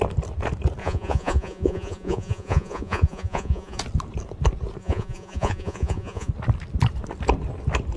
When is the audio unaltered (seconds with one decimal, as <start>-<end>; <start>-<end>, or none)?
0.0-0.8; 3.8-4.8; 6.3-8.0